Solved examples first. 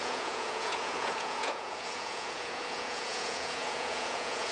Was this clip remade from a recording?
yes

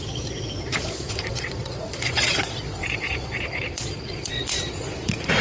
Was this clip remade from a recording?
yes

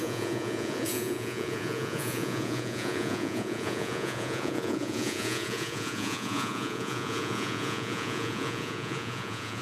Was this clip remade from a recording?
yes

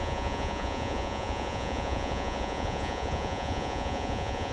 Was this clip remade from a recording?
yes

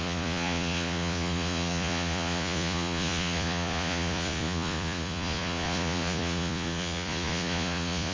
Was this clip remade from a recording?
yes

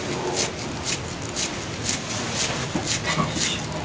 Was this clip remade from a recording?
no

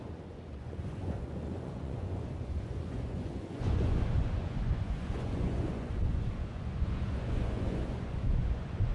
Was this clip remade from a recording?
yes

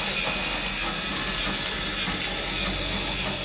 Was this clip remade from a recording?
no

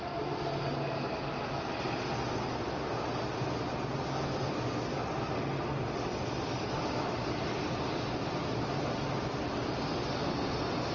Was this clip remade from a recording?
no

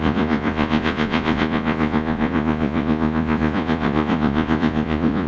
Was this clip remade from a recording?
yes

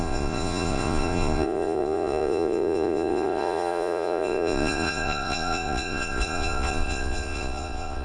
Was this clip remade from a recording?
yes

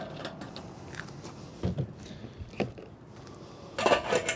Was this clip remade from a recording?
no